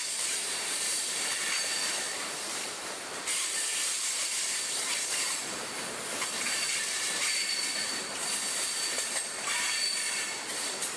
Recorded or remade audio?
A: remade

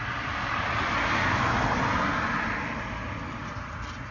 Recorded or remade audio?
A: recorded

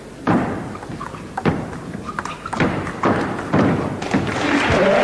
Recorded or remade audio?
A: recorded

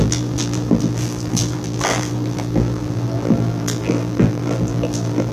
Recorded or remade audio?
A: remade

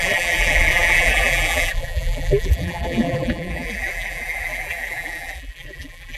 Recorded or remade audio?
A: remade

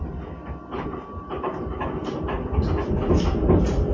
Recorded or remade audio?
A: recorded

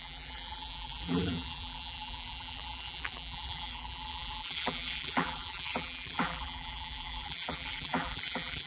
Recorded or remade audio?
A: remade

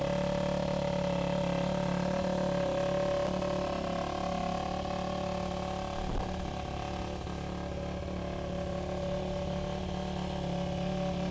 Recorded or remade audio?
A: recorded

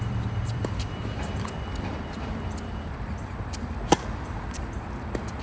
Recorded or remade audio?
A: remade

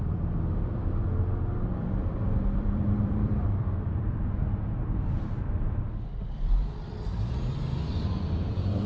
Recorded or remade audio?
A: remade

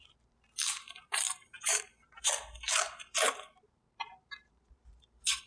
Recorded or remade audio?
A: remade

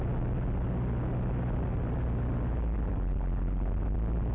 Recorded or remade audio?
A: recorded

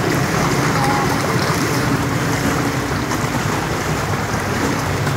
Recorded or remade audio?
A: remade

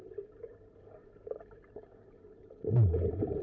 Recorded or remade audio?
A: remade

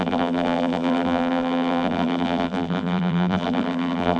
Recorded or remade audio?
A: remade